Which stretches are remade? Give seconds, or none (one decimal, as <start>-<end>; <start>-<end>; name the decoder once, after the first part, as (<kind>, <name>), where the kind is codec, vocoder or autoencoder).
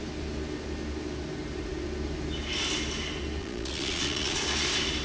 3.4-4.4 (vocoder, Vocos)